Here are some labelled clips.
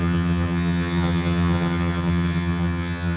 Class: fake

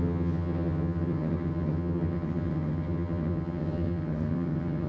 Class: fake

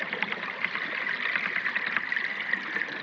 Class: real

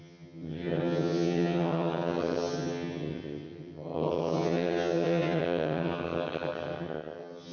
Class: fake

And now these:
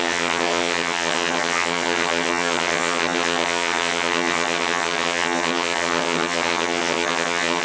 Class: fake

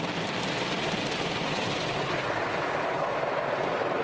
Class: real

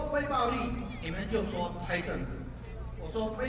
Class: real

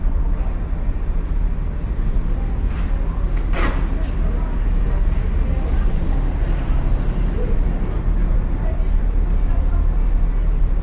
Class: real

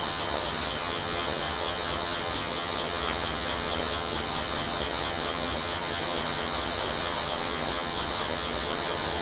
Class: fake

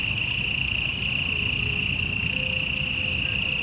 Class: real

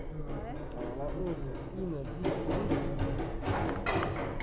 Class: real